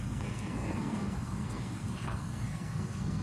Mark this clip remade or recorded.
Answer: remade